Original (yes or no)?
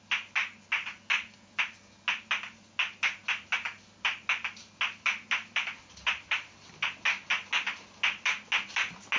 yes